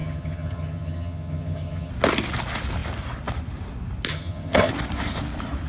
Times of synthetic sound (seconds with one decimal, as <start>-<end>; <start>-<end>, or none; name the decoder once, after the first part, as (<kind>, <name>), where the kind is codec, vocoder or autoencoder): 0.0-1.9 (vocoder, HiFi-GAN); 4.1-4.7